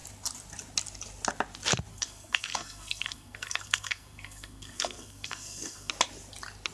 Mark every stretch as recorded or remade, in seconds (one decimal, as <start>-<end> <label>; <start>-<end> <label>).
0.0-1.9 recorded; 1.9-5.9 remade; 5.9-6.7 recorded